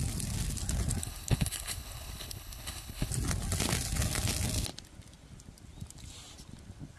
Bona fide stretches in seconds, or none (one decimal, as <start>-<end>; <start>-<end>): 0.0-1.0; 3.1-7.0